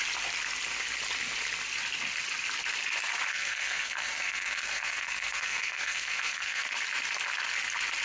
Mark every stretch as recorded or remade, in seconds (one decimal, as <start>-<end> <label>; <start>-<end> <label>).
0.0-3.3 recorded; 3.3-6.7 remade; 6.7-8.0 recorded